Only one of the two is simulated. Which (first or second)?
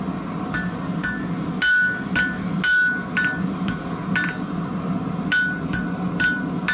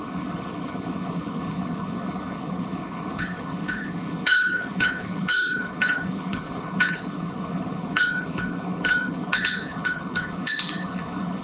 second